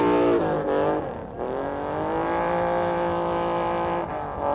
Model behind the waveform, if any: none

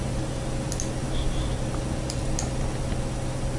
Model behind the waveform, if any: none